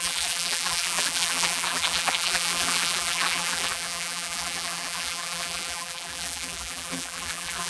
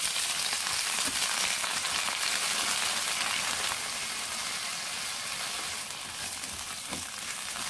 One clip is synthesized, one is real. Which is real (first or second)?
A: second